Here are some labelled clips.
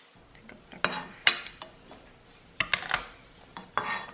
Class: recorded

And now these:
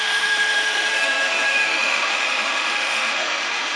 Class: remade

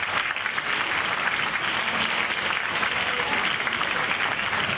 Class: recorded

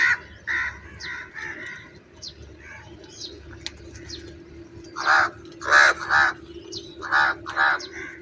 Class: recorded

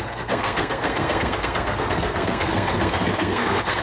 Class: remade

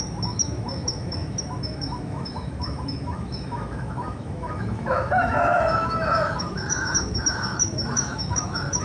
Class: remade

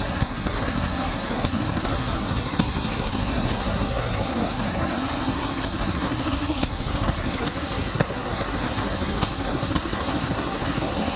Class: remade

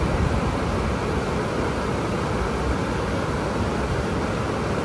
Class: recorded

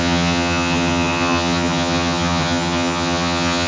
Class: remade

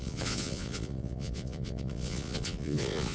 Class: remade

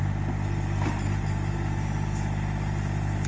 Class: recorded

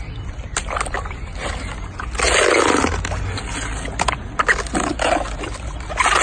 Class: recorded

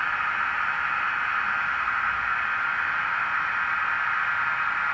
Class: recorded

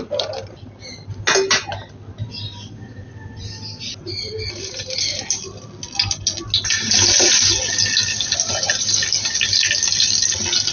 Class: recorded